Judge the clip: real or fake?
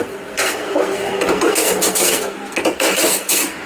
fake